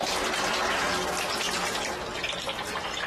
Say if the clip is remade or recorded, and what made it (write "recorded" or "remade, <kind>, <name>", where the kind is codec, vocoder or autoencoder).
recorded